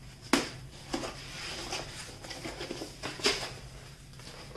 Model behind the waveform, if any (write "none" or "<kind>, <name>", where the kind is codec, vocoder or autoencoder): none